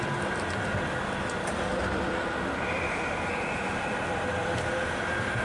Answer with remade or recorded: recorded